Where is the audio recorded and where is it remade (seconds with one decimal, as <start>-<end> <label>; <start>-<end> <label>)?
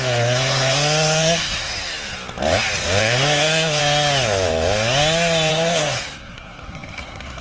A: 0.0-1.7 remade; 1.7-3.0 recorded; 3.0-3.8 remade; 3.8-5.5 recorded; 5.5-7.4 remade